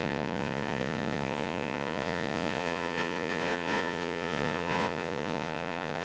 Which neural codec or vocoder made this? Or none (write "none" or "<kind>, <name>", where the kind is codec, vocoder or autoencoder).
vocoder, Vocos